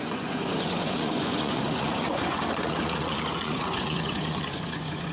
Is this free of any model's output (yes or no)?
no